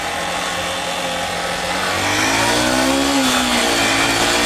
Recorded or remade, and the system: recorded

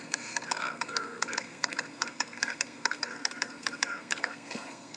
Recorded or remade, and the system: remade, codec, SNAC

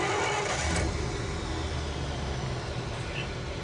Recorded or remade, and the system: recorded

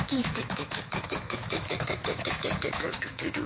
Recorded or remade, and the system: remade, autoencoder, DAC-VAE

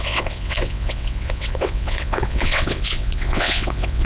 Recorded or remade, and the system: remade, vocoder, WaveNeXt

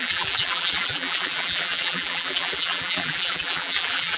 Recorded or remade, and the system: remade, vocoder, BigVGAN v2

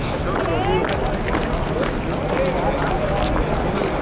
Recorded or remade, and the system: recorded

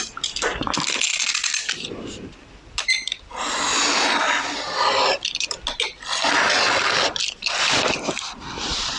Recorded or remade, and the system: recorded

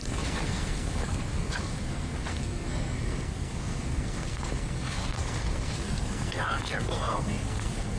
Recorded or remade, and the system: remade, codec, SNAC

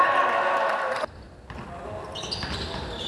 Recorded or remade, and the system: recorded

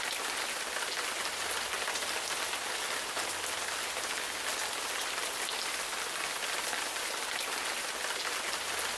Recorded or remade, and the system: recorded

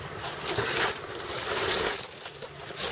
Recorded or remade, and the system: recorded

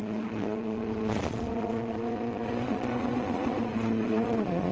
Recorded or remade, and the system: remade, vocoder, Vocos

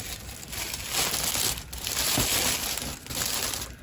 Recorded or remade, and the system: recorded